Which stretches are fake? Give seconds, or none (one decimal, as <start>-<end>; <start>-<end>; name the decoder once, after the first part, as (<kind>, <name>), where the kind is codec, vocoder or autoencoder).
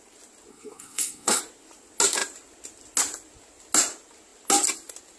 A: 0.5-1.4 (codec, SNAC)